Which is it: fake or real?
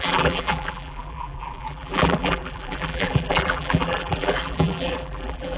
fake